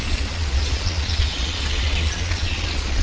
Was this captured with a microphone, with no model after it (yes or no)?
no